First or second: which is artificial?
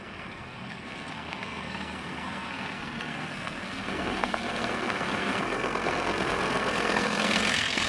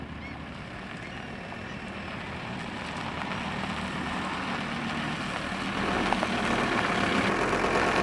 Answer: first